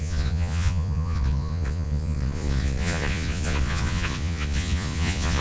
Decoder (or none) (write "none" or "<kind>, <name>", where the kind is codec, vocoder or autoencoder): vocoder, Vocos